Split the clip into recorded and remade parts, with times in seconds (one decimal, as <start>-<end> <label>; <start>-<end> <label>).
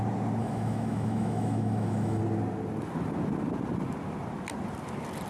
0.0-0.4 recorded; 0.4-2.2 remade; 2.2-5.3 recorded